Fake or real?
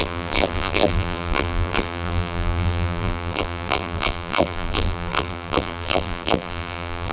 fake